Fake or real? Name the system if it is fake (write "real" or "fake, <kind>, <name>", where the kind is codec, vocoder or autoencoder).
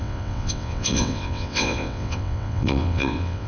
fake, vocoder, WaveNeXt